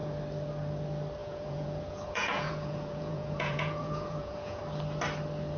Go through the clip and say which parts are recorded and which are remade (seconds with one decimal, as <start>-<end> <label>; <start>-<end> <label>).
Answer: 0.0-1.2 recorded; 1.2-4.6 remade; 4.6-5.6 recorded